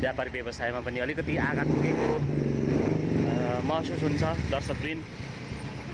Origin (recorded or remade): recorded